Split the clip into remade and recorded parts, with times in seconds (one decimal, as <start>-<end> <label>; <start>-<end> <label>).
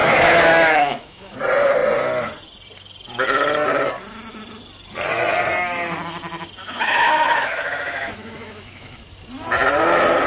0.0-1.4 remade; 1.4-6.6 recorded; 6.6-9.0 remade; 9.0-10.3 recorded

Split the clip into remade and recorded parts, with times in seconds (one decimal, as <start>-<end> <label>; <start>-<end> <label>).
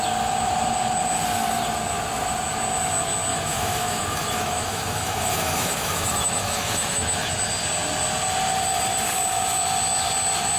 0.0-3.3 recorded; 3.3-7.3 remade; 7.3-10.6 recorded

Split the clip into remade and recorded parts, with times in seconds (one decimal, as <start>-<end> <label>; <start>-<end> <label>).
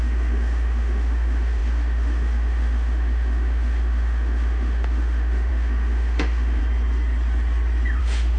0.0-6.6 remade; 6.6-8.0 recorded; 8.0-8.4 remade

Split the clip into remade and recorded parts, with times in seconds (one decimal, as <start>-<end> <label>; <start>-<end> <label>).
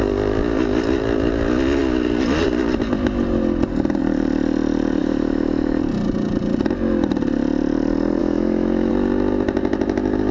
0.0-5.0 recorded; 5.0-5.8 remade; 5.8-8.2 recorded; 8.2-8.9 remade; 8.9-10.3 recorded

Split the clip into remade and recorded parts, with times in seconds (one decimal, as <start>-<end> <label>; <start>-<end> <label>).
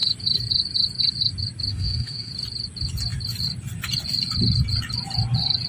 0.0-1.7 recorded; 1.7-2.3 remade; 2.3-5.7 recorded